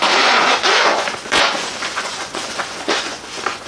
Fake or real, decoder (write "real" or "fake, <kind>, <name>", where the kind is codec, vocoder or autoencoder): fake, vocoder, Vocos